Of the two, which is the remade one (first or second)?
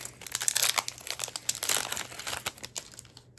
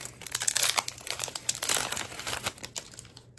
second